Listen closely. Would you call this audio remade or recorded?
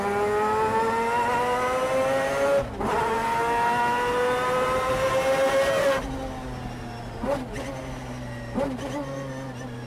recorded